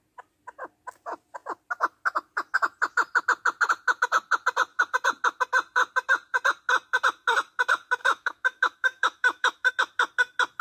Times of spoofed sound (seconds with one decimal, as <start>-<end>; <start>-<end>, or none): 8.0-9.7